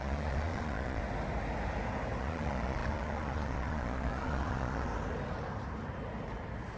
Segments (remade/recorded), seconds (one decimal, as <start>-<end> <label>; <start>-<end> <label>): 0.0-1.0 remade; 1.0-2.2 recorded; 2.2-4.9 remade; 4.9-6.8 recorded